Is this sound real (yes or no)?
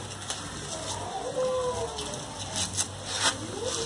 yes